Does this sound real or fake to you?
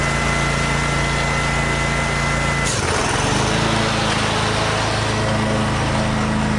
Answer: real